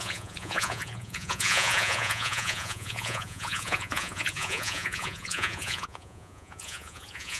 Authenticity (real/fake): fake